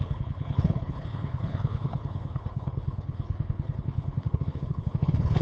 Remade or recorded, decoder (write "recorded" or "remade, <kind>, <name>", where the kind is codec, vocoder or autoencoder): remade, codec, HILCodec